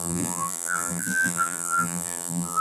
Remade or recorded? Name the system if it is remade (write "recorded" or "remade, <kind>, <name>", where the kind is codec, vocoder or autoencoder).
remade, vocoder, BigVGAN v2